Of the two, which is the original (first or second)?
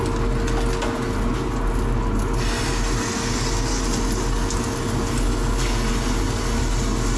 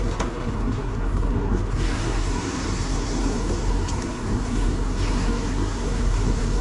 first